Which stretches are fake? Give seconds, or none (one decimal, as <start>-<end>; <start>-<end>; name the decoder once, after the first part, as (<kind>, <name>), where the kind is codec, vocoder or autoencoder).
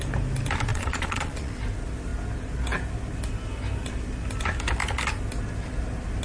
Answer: 0.7-1.5 (vocoder, Vocos)